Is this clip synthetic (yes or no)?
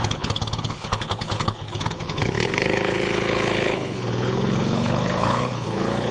yes